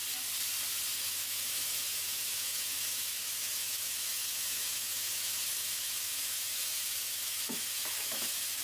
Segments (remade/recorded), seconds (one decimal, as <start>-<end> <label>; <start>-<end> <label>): 0.0-1.0 recorded; 1.0-8.6 remade